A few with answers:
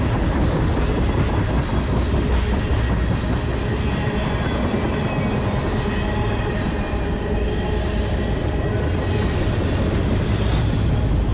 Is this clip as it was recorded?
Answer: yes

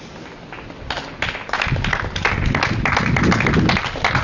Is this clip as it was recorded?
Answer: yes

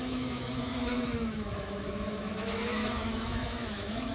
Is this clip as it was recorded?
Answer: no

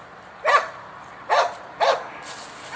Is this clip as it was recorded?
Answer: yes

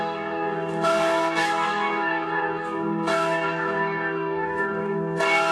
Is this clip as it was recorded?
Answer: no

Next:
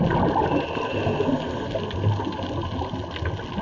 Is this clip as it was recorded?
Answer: yes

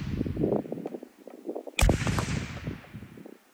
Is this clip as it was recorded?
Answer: yes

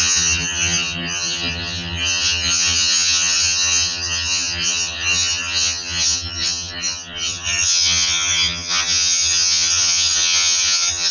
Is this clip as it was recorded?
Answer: no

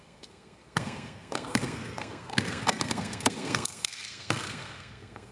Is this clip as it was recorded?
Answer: no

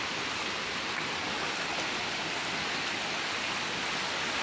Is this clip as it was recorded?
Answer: yes